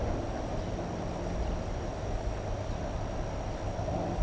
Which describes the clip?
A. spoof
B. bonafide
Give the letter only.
B